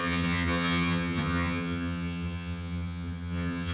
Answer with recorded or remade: remade